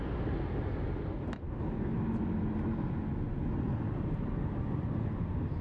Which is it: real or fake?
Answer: real